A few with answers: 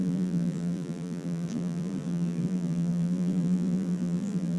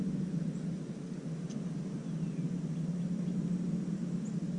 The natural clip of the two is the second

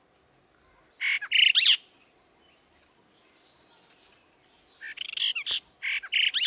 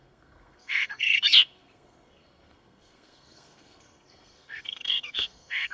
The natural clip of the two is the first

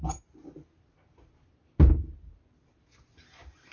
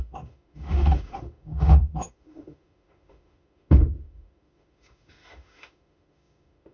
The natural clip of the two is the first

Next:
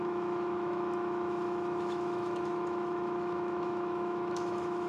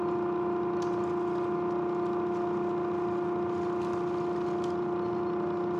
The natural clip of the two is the second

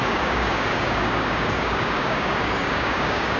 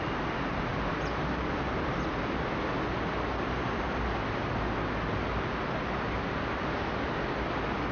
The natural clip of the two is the second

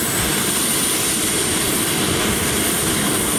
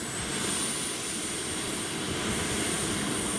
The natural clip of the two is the second